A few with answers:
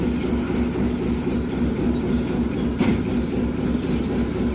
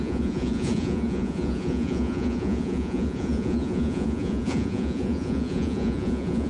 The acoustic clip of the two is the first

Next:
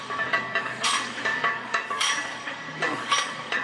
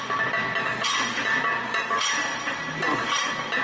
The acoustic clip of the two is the second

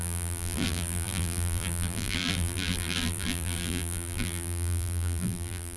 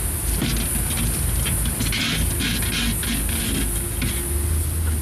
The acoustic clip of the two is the second